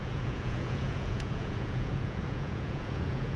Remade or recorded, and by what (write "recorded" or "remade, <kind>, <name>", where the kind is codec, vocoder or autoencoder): remade, vocoder, Vocos